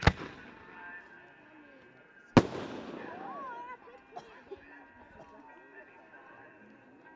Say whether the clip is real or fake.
real